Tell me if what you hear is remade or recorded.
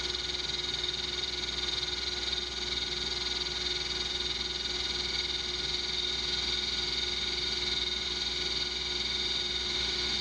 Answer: recorded